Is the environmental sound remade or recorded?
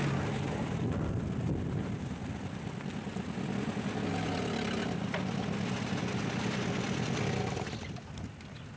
recorded